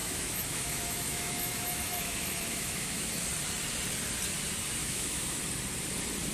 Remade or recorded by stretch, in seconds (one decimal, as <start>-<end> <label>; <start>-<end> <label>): 0.0-3.1 remade; 3.1-4.8 recorded; 4.8-5.4 remade; 5.4-6.3 recorded